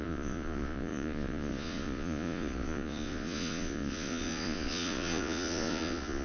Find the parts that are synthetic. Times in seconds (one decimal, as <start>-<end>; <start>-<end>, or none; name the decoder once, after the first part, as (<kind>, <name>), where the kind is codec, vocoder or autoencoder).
0.0-6.2 (vocoder, Vocos)